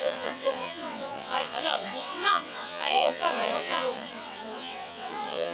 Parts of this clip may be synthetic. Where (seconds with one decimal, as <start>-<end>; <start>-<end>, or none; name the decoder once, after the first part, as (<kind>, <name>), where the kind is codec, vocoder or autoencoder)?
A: 0.0-5.5 (vocoder, WaveNeXt)